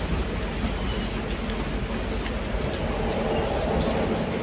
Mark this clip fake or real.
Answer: real